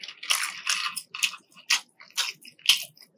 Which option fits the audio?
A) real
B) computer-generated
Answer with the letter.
A